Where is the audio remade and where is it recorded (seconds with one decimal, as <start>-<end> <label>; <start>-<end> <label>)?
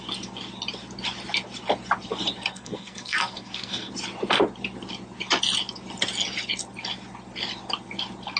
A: 0.0-2.5 recorded; 2.5-3.9 remade; 3.9-8.4 recorded